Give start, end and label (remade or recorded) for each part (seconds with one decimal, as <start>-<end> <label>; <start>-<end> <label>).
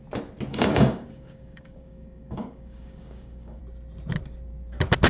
0.0-0.5 recorded; 0.5-3.6 remade; 3.6-5.1 recorded